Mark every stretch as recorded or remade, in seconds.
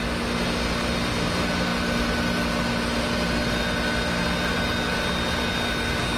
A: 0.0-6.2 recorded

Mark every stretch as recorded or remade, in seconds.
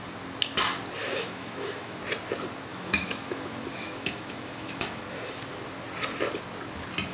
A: 0.0-1.0 recorded; 1.0-2.0 remade; 2.0-2.7 recorded; 2.7-5.0 remade; 5.0-7.1 recorded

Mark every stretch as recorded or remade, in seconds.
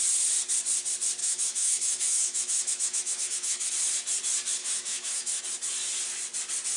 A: 0.0-1.2 recorded; 1.2-3.7 remade; 3.7-4.6 recorded; 4.6-5.4 remade; 5.4-6.8 recorded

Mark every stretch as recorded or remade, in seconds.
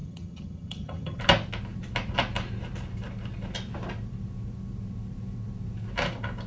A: 0.0-1.2 remade; 1.2-6.5 recorded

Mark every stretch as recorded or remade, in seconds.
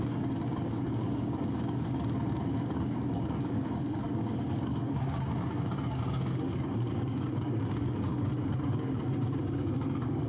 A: 0.0-10.3 remade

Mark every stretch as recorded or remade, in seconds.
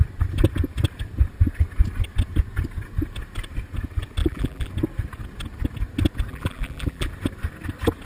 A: 0.0-4.2 recorded; 4.2-4.7 remade; 4.7-6.3 recorded; 6.3-7.1 remade; 7.1-8.1 recorded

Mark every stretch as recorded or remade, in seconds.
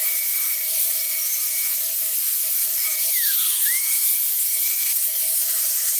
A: 0.0-6.0 remade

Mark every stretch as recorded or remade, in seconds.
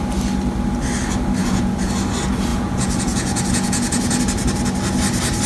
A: 0.0-1.4 recorded; 1.4-1.9 remade; 1.9-2.5 recorded; 2.5-4.2 remade; 4.2-5.5 recorded